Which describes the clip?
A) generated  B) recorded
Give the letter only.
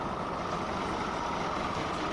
B